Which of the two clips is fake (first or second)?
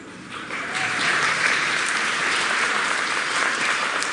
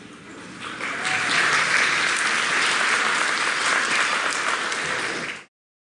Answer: first